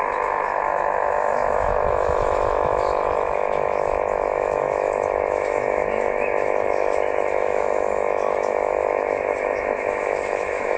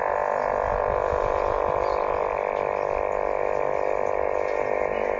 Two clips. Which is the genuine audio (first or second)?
second